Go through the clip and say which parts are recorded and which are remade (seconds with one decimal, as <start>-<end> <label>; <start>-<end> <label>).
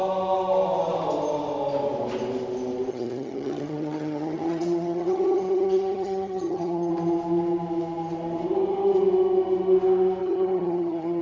0.0-2.9 recorded; 2.9-6.9 remade; 6.9-10.2 recorded; 10.2-11.2 remade